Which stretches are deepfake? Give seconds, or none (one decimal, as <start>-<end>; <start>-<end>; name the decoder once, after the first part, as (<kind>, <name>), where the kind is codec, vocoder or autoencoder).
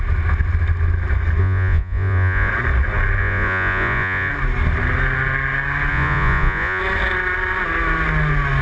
1.4-2.5 (vocoder, Vocos); 3.2-4.3; 5.9-6.8